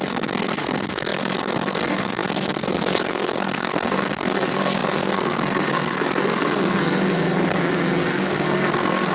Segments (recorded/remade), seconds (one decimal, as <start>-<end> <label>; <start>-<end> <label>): 0.0-9.1 remade